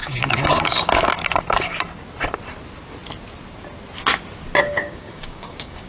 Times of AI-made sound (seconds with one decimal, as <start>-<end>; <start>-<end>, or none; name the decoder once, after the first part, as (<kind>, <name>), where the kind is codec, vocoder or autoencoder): 0.0-1.1 (codec, DAC); 4.6-5.9